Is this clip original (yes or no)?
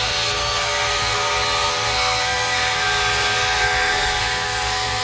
no